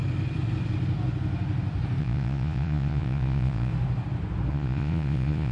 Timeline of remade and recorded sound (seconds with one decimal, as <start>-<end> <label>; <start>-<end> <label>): 0.0-2.0 recorded; 2.0-3.7 remade; 3.7-4.5 recorded; 4.5-5.5 remade